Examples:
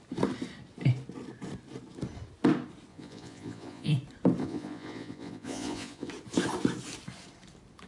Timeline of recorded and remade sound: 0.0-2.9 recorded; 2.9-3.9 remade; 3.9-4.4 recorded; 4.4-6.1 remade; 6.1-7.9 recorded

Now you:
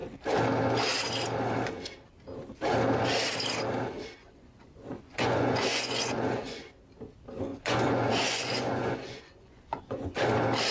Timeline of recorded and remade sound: 0.0-4.2 recorded; 4.2-6.8 remade; 6.8-7.5 recorded; 7.5-10.2 remade; 10.2-10.7 recorded

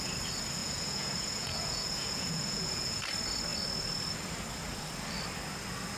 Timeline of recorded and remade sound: 0.0-0.6 recorded; 0.6-3.0 remade; 3.0-6.0 recorded

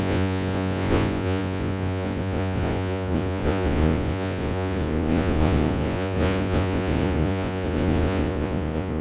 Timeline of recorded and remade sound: 0.0-9.0 remade

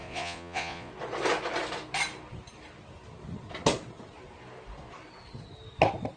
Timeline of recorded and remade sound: 0.0-0.9 remade; 0.9-6.2 recorded

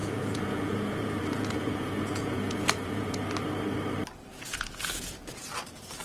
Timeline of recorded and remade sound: 0.0-3.2 remade; 3.2-4.3 recorded; 4.3-5.4 remade; 5.4-6.0 recorded